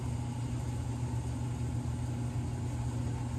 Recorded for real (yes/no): yes